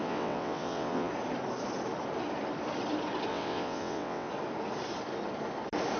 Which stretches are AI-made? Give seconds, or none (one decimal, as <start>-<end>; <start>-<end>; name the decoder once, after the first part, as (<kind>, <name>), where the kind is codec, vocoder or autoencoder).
0.0-1.1 (vocoder, WaveNeXt); 3.3-4.3